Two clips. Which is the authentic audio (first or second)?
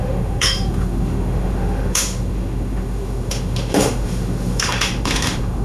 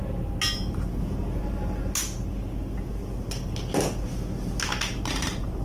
second